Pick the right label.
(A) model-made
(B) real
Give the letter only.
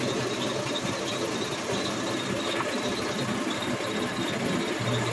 B